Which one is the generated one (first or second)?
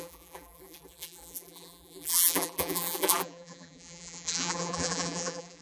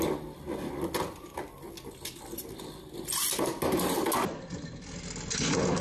first